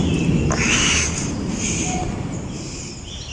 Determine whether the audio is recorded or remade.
recorded